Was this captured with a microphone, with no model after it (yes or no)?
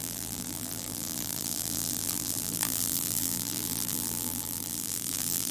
no